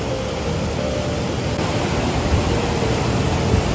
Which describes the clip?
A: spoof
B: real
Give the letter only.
B